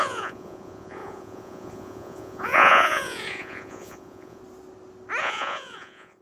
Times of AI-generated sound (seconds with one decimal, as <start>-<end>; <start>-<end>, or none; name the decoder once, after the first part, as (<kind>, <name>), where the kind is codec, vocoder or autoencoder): 0.0-4.4 (vocoder, Vocos); 5.2-6.2